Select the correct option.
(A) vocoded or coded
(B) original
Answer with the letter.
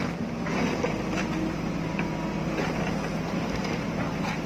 B